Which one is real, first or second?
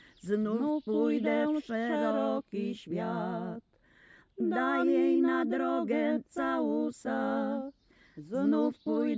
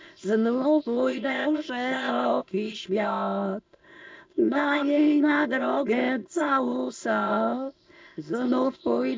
first